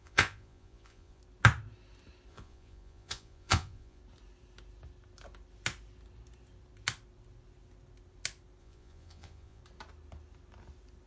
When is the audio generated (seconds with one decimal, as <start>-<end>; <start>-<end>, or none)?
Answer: 0.0-1.2; 2.3-4.0; 8.6-9.6